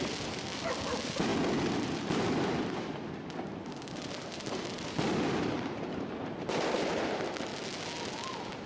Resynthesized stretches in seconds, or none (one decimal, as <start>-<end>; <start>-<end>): 0.0-7.5